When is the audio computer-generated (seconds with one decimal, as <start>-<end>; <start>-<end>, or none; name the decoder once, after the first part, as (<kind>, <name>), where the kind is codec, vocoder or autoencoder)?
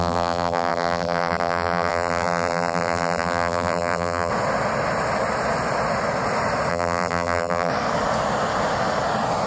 0.0-4.3 (vocoder, BigVGAN v2); 6.7-7.7